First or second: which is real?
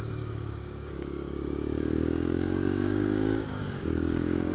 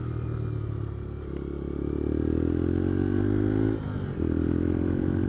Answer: second